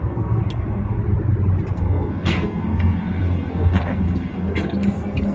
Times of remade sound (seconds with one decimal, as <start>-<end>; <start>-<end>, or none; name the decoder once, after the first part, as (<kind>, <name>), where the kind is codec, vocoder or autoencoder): 0.0-1.0 (codec, SNAC); 1.7-5.3